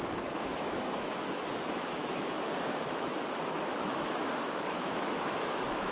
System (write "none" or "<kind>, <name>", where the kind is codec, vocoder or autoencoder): autoencoder, DAC-VAE